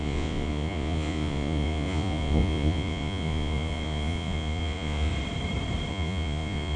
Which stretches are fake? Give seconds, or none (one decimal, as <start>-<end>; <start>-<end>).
0.0-5.1; 5.9-6.8